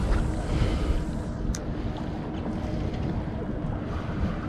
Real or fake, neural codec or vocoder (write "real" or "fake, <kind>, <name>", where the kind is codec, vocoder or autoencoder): real